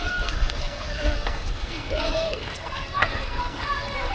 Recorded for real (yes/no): no